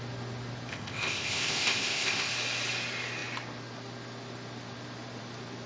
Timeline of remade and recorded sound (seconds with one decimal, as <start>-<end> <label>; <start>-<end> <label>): 0.0-0.7 recorded; 0.7-2.3 remade; 2.3-5.7 recorded